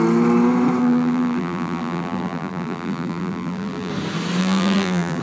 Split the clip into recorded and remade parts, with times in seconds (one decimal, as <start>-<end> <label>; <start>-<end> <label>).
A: 0.0-0.8 recorded; 0.8-3.9 remade; 3.9-4.4 recorded; 4.4-5.2 remade